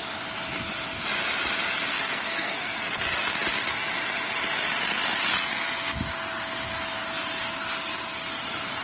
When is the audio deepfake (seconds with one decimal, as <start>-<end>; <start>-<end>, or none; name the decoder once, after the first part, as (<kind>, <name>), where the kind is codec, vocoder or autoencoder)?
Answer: 1.9-3.0 (codec, SNAC)